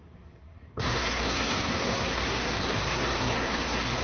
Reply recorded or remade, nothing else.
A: remade